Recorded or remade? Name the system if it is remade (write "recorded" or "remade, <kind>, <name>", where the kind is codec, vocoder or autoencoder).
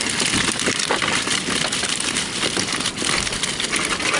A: recorded